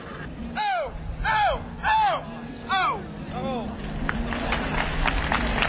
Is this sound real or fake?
real